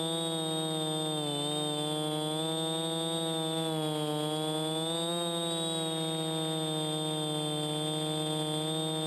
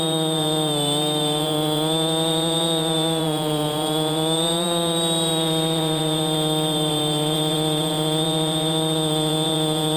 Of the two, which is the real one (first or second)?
first